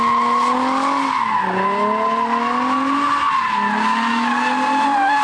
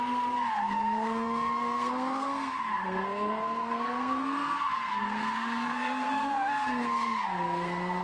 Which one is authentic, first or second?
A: first